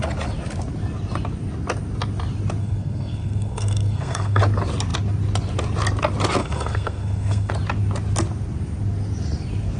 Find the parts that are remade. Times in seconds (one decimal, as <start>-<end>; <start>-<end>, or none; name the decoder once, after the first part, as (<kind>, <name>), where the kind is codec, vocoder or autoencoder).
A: 2.6-4.4 (codec, SNAC); 6.4-7.5